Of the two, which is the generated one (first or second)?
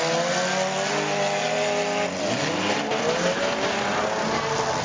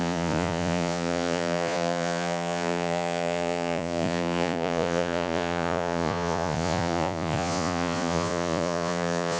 second